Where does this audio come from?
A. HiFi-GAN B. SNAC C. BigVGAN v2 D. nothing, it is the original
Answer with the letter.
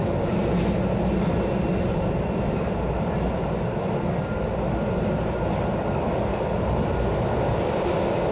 D